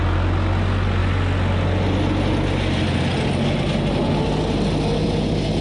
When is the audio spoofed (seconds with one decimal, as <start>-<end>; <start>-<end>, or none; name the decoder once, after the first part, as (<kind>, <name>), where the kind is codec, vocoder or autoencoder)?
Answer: none